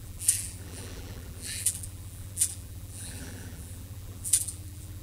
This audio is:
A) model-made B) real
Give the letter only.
A